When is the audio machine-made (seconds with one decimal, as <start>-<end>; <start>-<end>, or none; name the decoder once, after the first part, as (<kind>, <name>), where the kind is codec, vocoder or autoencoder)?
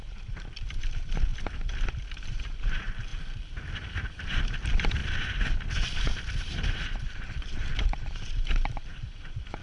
0.0-1.3 (vocoder, BigVGAN v2); 1.9-3.1; 4.2-5.0; 6.2-9.6